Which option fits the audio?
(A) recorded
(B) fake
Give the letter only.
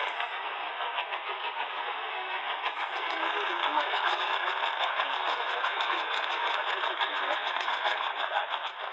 B